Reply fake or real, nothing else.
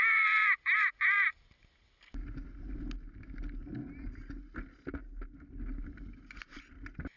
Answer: real